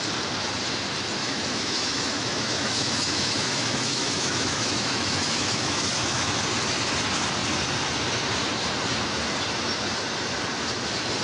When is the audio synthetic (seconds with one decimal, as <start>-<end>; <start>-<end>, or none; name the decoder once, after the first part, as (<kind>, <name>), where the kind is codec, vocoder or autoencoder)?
1.2-6.4 (autoencoder, DAC-VAE)